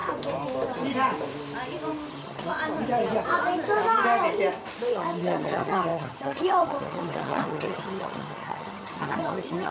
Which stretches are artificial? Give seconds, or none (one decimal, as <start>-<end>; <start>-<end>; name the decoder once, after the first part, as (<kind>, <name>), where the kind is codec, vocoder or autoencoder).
2.1-2.5 (vocoder, HiFi-GAN); 4.9-9.7